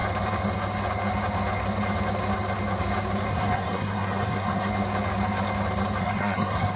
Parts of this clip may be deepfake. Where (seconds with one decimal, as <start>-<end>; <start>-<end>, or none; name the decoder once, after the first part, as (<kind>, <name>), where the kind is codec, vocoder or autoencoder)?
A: 3.3-4.7 (codec, SNAC); 6.0-6.8